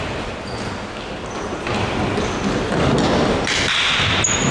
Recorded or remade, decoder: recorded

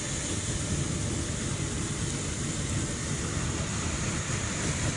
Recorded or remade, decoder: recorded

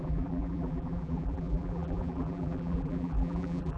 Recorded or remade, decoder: remade, vocoder, BigVGAN v2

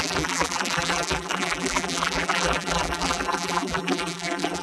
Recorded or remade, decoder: remade, vocoder, BigVGAN v2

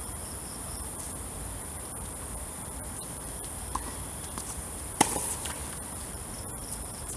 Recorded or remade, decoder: remade, vocoder, BigVGAN v2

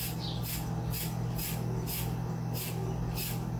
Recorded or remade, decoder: recorded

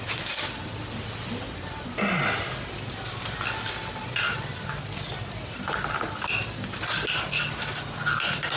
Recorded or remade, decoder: recorded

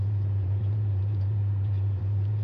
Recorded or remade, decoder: remade, vocoder, BigVGAN v2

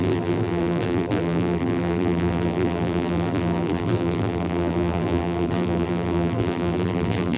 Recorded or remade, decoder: remade, vocoder, BigVGAN v2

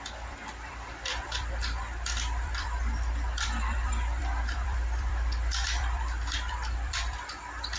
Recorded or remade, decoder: remade, vocoder, BigVGAN v2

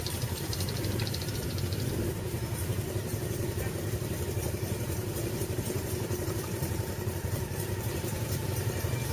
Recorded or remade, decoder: remade, vocoder, BigVGAN v2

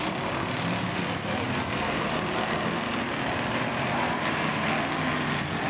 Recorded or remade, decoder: remade, vocoder, BigVGAN v2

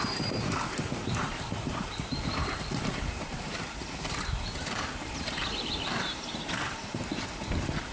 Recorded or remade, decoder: remade, vocoder, BigVGAN v2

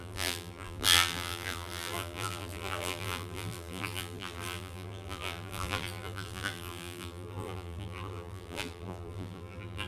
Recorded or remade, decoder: remade, vocoder, BigVGAN v2